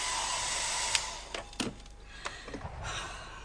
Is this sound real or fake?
real